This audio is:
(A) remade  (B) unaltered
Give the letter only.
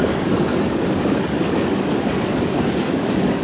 A